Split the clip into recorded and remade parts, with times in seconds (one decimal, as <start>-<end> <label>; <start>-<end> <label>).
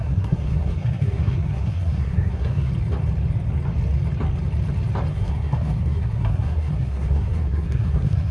0.0-2.7 remade; 2.7-5.1 recorded; 5.1-8.3 remade